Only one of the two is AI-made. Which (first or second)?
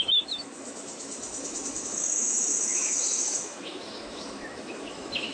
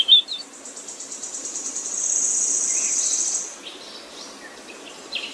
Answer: first